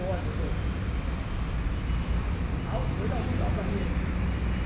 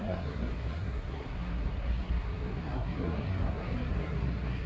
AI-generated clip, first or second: second